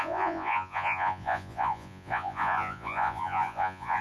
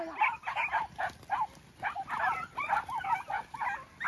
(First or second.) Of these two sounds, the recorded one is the second